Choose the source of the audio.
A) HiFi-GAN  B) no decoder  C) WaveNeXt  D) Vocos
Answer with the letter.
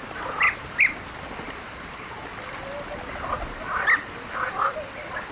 B